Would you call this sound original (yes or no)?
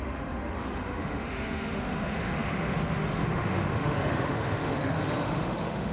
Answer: no